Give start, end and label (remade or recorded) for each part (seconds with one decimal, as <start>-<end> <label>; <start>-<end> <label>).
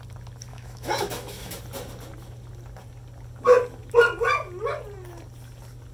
0.0-0.5 recorded; 0.5-1.6 remade; 1.6-5.9 recorded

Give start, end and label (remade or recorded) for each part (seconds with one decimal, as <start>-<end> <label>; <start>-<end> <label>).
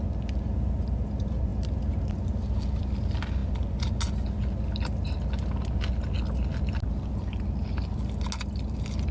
0.0-9.1 recorded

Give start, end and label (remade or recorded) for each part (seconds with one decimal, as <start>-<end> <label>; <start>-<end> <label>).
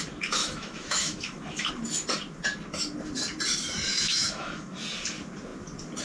0.0-0.4 recorded; 0.4-1.7 remade; 1.7-3.9 recorded; 3.9-4.8 remade; 4.8-6.0 recorded